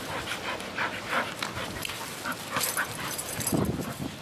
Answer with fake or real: real